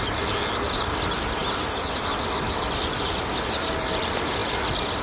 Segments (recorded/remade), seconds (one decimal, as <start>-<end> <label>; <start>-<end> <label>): 0.0-5.0 recorded